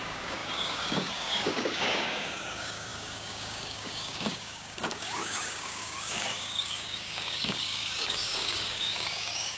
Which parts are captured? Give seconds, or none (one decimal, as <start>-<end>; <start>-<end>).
none

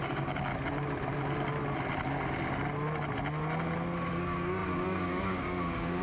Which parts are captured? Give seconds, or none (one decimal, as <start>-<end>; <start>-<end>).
0.5-4.1